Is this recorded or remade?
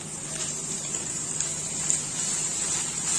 remade